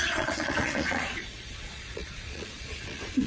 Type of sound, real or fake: fake